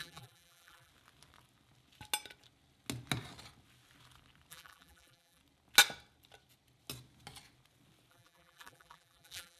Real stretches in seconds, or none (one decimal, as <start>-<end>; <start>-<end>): 0.9-4.5; 5.4-8.1